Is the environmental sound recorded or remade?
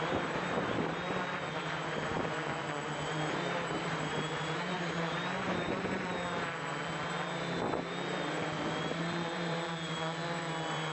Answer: remade